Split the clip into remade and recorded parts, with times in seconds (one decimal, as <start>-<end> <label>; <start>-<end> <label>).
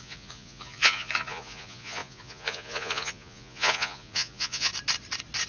0.0-4.7 remade; 4.7-5.5 recorded